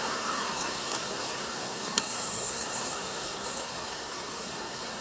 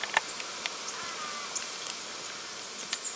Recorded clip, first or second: second